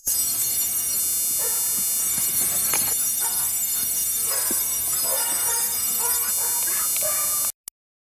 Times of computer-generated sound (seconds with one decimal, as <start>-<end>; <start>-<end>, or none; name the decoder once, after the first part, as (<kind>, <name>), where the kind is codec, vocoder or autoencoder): 0.0-1.0 (codec, SNAC); 2.0-6.3